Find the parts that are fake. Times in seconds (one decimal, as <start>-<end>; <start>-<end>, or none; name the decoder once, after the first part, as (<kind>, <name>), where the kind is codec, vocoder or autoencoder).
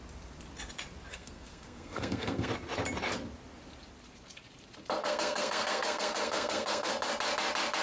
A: 1.1-2.5 (codec, SNAC); 5.0-6.9